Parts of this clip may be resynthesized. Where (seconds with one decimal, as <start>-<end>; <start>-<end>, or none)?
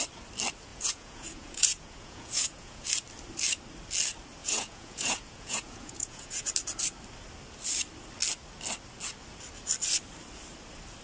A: 0.7-2.9; 4.4-6.5